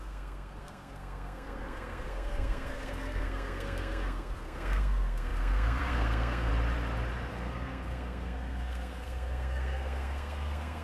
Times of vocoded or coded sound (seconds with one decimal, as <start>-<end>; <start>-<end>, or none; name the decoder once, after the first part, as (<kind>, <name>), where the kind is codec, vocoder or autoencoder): 0.0-6.5 (codec, SNAC); 7.3-10.8